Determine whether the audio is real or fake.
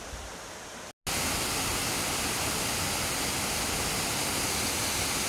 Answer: real